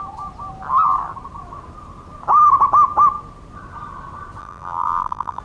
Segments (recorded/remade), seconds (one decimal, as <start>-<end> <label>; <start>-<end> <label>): 0.0-4.4 recorded; 4.4-5.4 remade